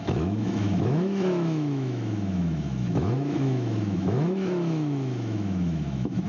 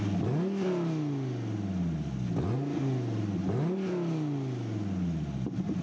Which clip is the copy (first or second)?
first